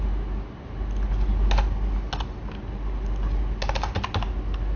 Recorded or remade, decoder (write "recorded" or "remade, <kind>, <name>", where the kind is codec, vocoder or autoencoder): recorded